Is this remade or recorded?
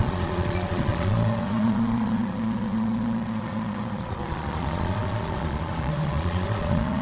remade